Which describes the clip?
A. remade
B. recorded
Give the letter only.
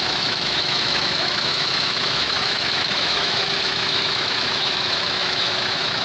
A